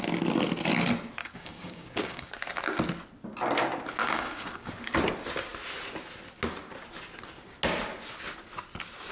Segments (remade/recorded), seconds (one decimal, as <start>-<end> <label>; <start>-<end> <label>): 0.0-1.2 recorded; 1.2-2.3 remade; 2.3-4.0 recorded; 4.0-4.7 remade; 4.7-9.1 recorded